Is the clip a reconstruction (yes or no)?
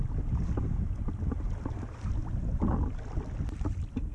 no